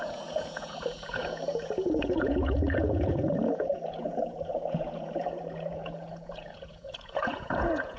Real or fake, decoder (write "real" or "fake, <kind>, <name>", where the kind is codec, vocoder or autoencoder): fake, vocoder, Vocos